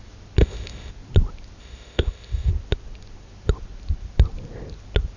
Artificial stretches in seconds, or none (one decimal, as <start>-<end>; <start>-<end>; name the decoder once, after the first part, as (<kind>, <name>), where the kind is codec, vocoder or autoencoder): 0.4-0.9 (codec, ZipCodec); 1.6-2.5